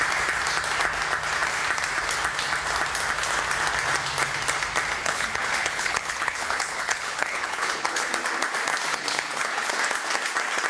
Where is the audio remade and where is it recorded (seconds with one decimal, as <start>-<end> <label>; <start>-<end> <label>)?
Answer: 0.0-5.0 recorded; 5.0-8.1 remade; 8.1-8.9 recorded; 8.9-9.7 remade; 9.7-10.7 recorded